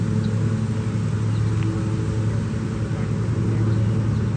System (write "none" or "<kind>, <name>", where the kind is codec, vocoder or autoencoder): none